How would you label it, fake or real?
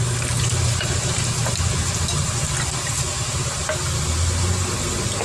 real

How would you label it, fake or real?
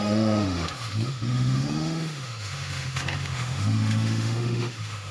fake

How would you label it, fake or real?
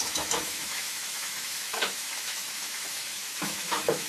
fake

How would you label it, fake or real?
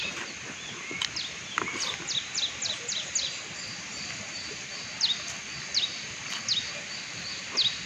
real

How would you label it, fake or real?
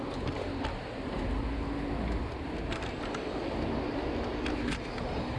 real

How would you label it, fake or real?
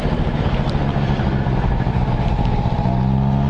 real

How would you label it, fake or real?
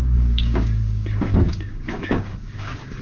fake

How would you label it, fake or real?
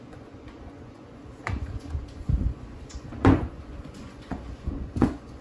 fake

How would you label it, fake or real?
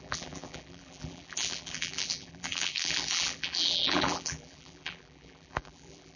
fake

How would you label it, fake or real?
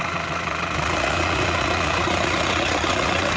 fake